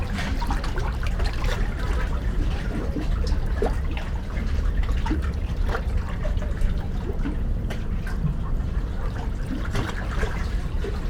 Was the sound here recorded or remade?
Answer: remade